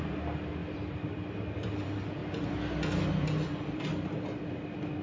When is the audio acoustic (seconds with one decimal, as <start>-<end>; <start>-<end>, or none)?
2.2-3.1; 3.9-5.0

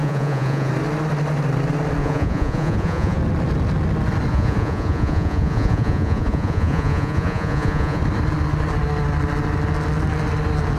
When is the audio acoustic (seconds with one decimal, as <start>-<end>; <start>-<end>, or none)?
0.7-2.0; 3.2-4.3; 8.0-10.8

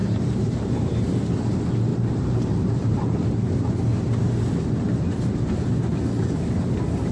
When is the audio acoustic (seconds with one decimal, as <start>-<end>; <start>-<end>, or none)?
1.0-1.9; 3.6-7.1

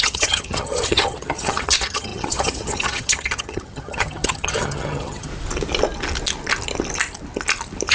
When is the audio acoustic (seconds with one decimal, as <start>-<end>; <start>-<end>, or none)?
5.3-7.9

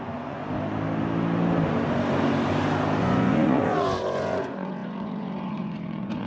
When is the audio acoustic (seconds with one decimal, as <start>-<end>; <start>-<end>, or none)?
0.4-3.0

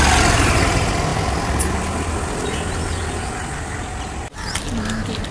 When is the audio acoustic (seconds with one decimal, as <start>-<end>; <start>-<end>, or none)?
0.0-5.3

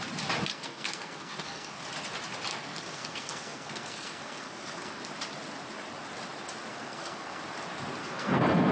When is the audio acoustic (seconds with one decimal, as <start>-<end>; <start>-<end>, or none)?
0.0-0.5; 1.8-2.5; 5.0-6.7; 7.4-8.0

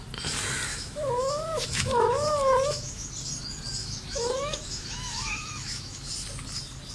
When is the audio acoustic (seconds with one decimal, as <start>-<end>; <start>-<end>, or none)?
0.0-0.7; 3.1-3.8; 6.1-6.9